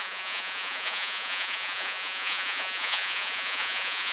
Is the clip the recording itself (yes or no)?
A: no